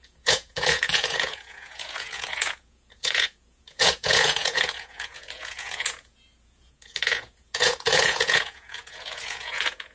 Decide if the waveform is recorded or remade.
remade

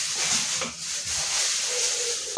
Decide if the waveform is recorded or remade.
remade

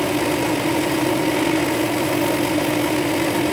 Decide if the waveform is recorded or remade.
recorded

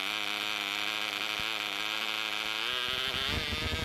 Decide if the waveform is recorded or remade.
recorded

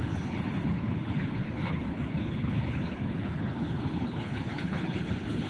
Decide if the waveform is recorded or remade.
remade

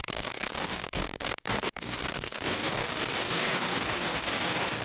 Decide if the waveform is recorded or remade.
remade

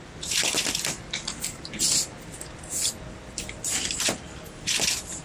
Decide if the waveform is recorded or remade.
remade